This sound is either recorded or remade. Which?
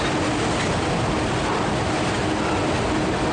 recorded